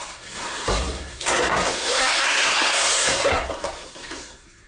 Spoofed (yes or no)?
yes